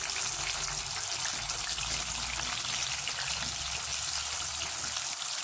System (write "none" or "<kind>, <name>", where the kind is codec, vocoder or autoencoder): none